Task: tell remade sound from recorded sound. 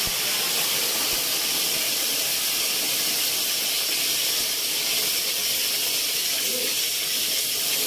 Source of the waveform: recorded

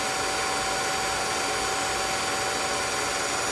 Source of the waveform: recorded